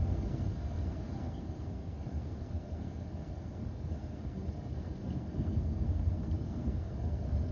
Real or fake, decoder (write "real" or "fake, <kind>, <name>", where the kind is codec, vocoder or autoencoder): fake, codec, SNAC